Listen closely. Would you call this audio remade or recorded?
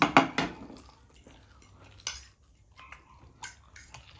recorded